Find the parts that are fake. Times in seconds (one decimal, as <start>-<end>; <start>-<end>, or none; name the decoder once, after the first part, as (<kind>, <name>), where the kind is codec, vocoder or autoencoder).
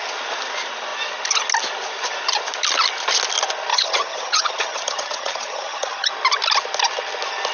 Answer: 3.7-6.1 (vocoder, HiFi-GAN)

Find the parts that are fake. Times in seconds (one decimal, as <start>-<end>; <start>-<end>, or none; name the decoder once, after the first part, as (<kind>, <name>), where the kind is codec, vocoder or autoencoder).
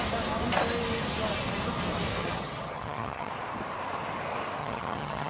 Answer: 2.2-3.3 (vocoder, HiFi-GAN); 4.6-5.3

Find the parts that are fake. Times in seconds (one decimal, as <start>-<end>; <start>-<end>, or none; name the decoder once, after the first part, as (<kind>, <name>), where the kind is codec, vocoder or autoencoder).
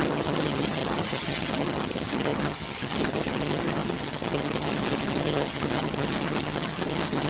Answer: 0.0-7.3 (vocoder, HiFi-GAN)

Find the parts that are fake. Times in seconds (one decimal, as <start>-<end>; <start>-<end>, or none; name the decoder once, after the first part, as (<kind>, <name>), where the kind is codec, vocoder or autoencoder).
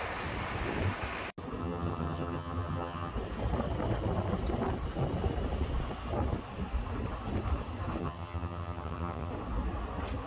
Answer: 1.6-3.1 (vocoder, HiFi-GAN); 8.0-9.3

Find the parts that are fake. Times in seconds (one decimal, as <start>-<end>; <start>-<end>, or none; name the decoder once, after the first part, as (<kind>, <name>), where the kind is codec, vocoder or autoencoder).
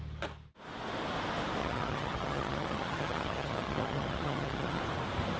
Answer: 1.6-4.8 (vocoder, HiFi-GAN)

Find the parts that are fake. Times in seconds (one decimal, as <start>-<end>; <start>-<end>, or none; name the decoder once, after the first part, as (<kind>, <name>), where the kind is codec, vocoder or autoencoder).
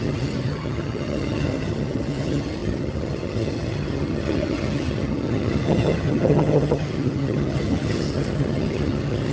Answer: 0.0-9.3 (vocoder, HiFi-GAN)